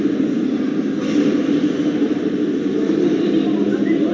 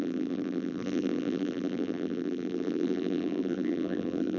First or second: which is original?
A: first